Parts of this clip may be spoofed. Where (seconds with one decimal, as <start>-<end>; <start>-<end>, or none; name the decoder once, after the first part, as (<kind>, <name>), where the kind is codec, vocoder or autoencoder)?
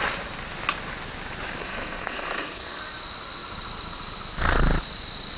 1.6-2.8 (codec, SNAC)